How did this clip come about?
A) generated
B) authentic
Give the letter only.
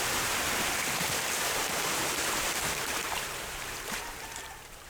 A